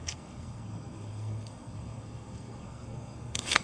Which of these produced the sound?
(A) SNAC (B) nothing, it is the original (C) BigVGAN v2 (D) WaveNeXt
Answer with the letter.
A